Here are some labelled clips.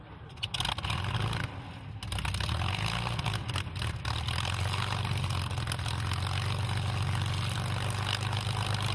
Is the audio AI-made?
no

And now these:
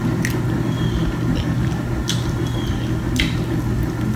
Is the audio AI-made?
no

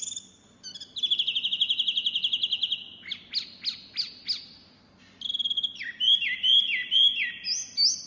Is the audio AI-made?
no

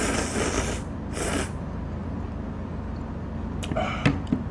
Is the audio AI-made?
no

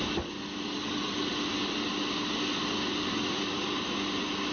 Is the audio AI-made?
no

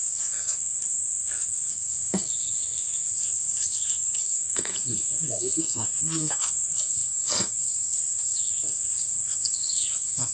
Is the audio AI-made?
yes